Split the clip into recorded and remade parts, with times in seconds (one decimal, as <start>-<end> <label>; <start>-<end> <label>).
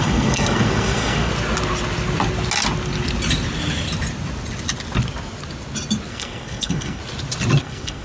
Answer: 0.0-1.3 remade; 1.3-6.1 recorded; 6.1-7.0 remade; 7.0-7.6 recorded; 7.6-8.0 remade